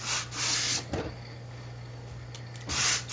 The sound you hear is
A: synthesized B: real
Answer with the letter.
B